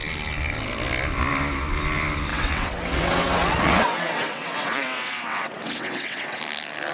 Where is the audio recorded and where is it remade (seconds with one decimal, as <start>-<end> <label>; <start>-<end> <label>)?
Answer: 0.0-2.3 recorded; 2.3-6.4 remade; 6.4-6.9 recorded